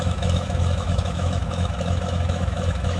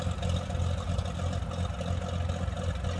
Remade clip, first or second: first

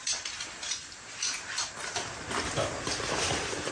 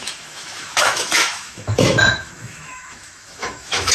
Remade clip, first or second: second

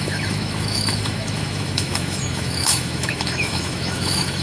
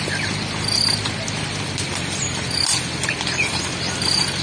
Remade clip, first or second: first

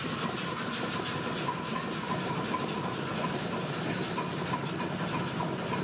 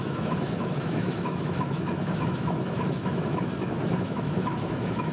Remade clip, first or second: second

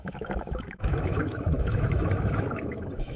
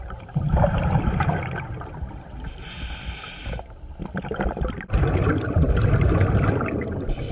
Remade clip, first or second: first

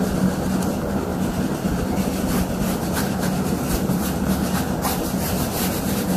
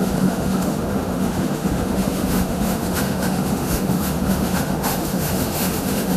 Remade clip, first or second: second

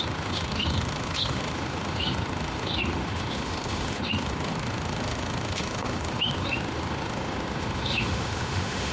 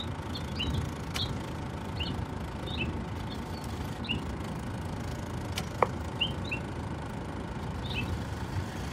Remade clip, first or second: first